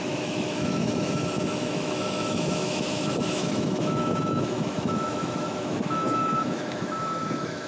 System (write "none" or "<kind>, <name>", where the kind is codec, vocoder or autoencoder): autoencoder, DAC-VAE